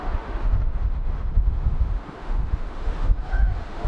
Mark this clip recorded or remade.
remade